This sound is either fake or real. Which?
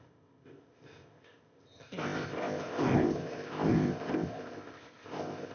fake